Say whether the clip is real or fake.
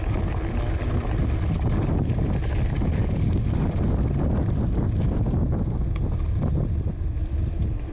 real